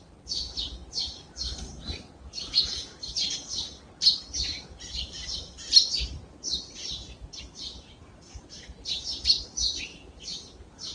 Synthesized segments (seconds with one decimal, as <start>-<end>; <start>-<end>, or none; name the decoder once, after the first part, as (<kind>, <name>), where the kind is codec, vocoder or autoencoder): none